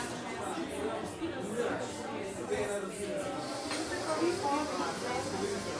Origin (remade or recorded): recorded